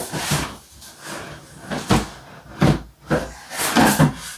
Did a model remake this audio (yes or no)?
no